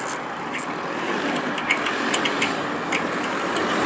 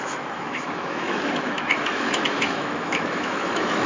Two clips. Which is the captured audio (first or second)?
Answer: first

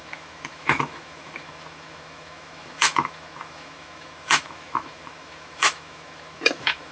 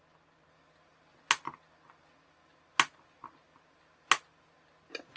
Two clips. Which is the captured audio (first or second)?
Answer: second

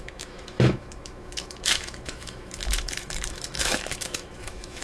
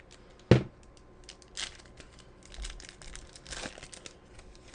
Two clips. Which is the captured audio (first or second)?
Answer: second